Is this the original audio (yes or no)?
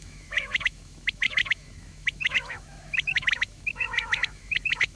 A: no